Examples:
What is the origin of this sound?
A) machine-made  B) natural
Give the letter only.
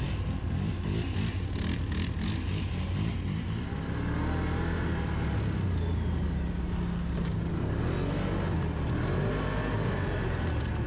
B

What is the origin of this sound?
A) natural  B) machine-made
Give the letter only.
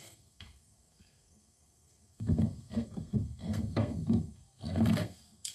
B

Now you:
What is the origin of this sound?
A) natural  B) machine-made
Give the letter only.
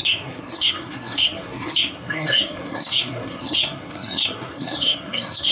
B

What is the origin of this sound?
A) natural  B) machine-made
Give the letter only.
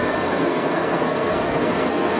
B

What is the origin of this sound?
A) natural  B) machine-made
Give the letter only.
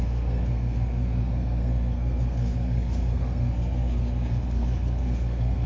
B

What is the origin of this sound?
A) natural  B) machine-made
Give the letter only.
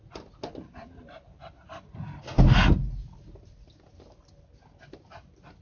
A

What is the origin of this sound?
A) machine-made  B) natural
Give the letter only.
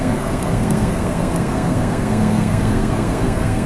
A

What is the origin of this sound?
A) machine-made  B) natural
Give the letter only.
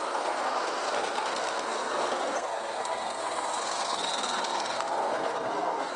A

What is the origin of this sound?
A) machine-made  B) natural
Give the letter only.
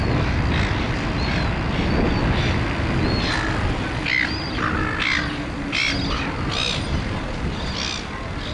B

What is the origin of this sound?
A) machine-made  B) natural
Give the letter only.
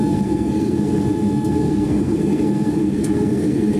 A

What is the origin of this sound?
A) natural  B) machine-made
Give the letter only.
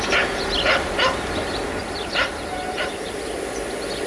A